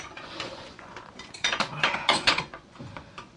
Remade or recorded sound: remade